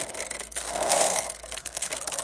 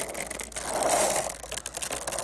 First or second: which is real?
second